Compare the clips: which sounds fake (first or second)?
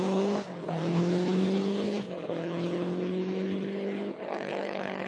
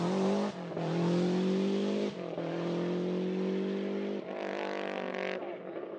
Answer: first